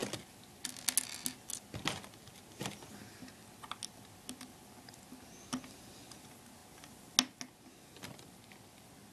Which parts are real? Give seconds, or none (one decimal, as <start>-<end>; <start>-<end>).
0.0-9.1